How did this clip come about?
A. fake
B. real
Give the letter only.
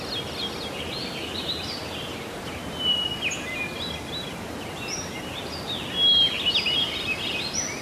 B